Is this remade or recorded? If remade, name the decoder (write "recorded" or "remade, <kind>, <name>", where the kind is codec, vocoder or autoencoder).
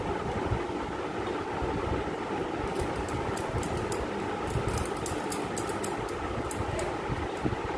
recorded